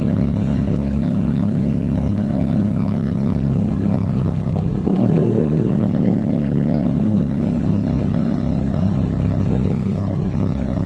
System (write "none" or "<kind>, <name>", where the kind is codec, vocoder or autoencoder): codec, SNAC